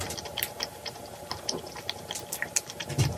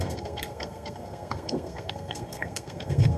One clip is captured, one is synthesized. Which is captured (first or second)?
first